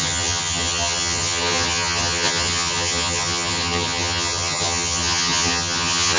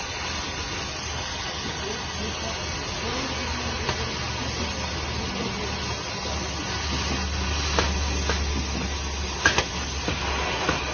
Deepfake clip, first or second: first